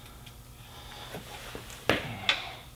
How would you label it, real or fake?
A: real